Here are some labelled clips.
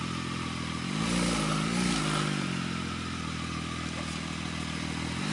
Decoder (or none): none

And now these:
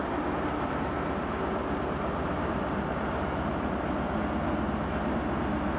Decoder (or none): none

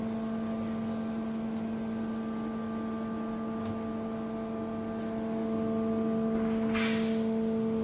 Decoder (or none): none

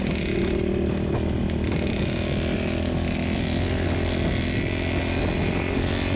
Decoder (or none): none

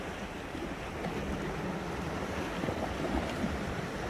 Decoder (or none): none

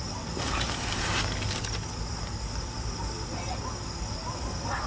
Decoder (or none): none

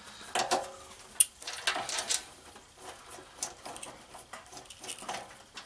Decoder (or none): none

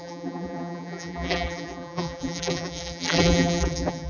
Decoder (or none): vocoder, BigVGAN v2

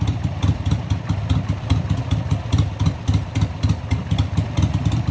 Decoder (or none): vocoder, BigVGAN v2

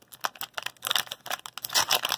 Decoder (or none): none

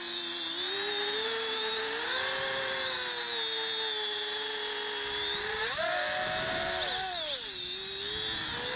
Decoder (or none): none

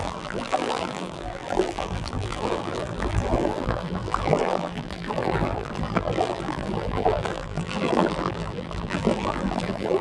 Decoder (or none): vocoder, BigVGAN v2